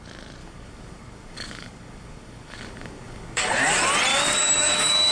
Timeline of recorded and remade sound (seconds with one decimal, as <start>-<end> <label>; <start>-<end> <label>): 0.0-0.4 recorded; 0.4-3.5 remade; 3.5-4.1 recorded; 4.1-5.1 remade